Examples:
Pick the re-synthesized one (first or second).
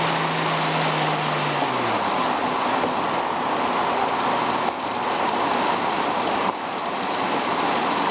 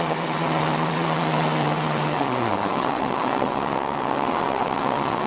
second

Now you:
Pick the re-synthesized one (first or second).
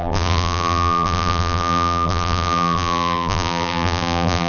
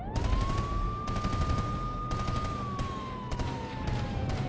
first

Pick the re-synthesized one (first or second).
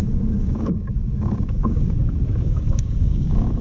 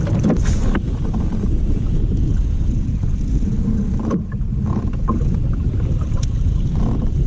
first